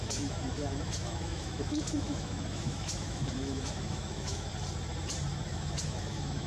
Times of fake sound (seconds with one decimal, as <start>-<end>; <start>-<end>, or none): 0.0-4.5; 5.5-6.5